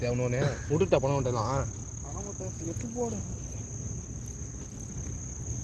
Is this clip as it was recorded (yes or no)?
yes